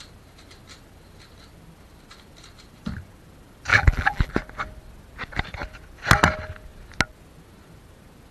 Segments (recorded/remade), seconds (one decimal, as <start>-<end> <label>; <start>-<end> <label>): 0.0-3.7 recorded; 3.7-4.3 remade; 4.3-8.3 recorded